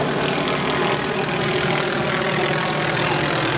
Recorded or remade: recorded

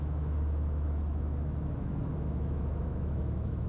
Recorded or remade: remade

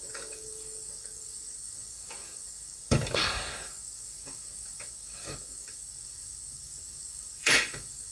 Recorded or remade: remade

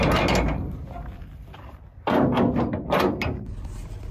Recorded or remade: recorded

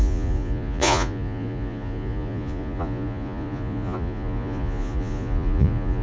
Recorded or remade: remade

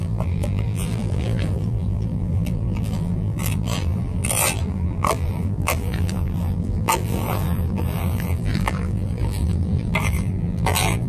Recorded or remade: remade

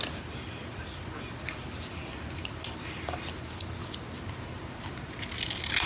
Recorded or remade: recorded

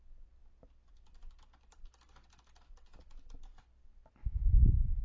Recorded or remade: recorded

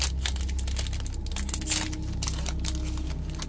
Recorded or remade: recorded